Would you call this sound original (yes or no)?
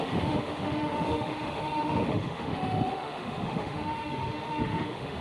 no